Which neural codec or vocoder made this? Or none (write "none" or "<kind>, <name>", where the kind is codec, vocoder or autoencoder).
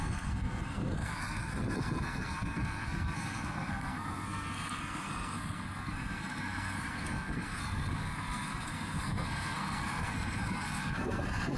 codec, SNAC